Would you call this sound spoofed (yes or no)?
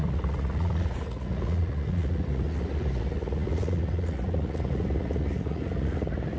yes